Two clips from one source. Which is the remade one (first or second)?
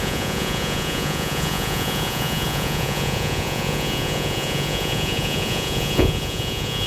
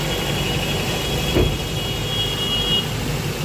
first